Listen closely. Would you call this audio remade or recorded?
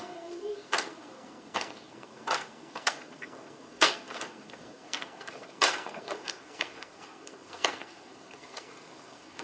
remade